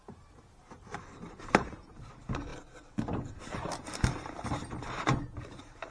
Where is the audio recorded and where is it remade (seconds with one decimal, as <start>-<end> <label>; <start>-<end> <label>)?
0.0-0.4 remade; 0.4-1.0 recorded; 1.0-2.5 remade; 2.5-5.4 recorded; 5.4-5.9 remade